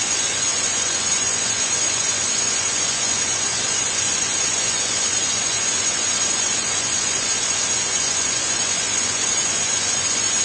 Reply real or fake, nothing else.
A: fake